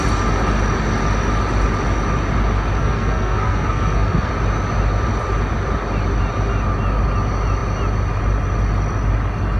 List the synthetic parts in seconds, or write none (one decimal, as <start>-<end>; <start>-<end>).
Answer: 2.8-4.3